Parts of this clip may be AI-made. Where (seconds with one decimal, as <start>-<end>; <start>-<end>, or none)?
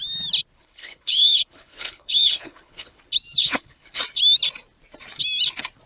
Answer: 0.6-3.0; 3.4-4.0